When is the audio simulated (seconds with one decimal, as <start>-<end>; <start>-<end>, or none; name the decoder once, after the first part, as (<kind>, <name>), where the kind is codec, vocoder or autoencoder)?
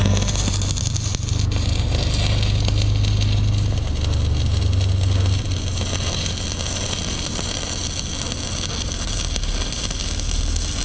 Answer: 1.1-1.9 (vocoder, BigVGAN v2)